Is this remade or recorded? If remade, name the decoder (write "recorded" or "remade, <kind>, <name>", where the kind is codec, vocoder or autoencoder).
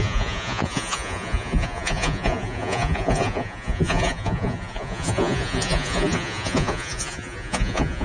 remade, vocoder, Vocos